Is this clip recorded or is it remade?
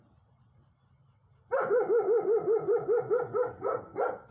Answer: remade